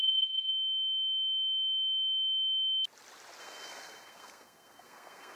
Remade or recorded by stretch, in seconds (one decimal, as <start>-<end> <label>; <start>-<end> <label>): 0.0-0.5 remade; 0.5-3.4 recorded; 3.4-5.3 remade